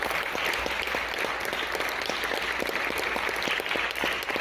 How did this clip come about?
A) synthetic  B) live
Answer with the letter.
B